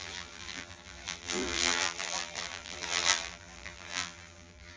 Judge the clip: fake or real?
fake